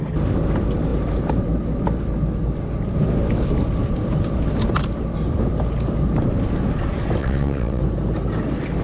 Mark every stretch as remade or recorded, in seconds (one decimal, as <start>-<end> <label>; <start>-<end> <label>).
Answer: 0.0-7.2 recorded; 7.2-7.8 remade; 7.8-8.8 recorded